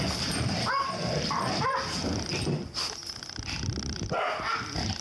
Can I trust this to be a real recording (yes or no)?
yes